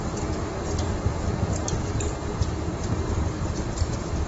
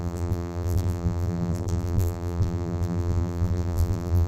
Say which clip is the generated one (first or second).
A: second